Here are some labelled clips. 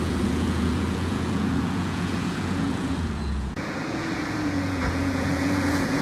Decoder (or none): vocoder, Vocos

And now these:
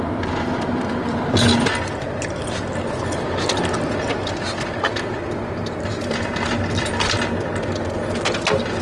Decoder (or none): none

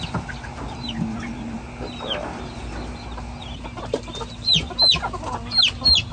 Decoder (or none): none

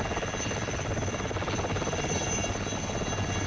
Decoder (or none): none